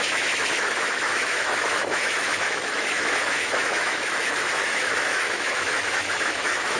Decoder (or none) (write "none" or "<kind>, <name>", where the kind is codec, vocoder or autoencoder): autoencoder, DAC-VAE